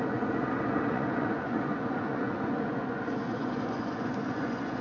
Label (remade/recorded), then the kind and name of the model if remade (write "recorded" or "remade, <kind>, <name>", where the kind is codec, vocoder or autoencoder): remade, vocoder, Vocos